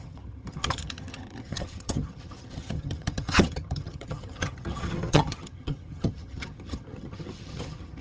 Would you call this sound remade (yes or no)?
yes